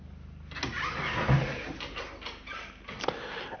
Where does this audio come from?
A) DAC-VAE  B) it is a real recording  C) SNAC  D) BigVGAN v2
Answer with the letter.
B